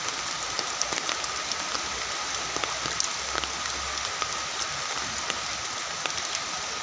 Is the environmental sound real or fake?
real